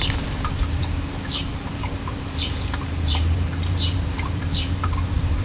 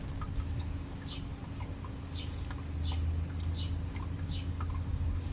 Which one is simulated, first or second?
first